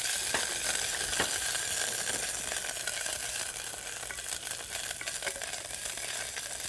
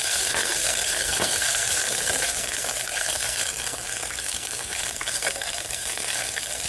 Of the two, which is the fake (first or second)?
second